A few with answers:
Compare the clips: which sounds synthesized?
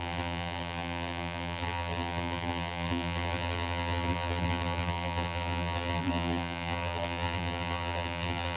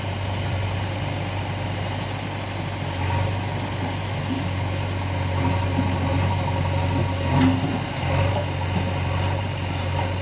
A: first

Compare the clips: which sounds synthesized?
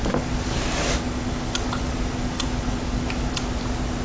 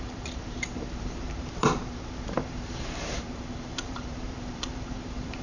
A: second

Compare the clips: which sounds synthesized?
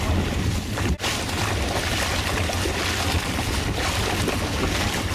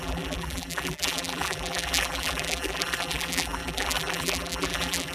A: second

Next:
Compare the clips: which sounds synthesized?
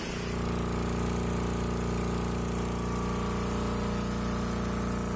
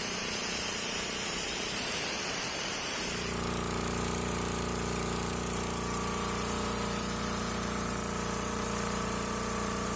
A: second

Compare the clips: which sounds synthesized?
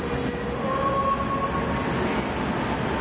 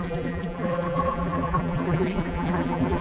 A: second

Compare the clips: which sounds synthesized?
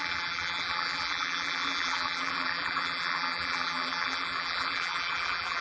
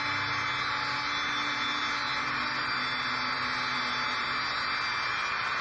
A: first